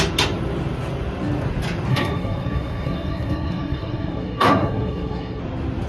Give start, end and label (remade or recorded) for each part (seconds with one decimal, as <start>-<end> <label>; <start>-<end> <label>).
0.0-1.9 recorded; 1.9-5.4 remade; 5.4-5.9 recorded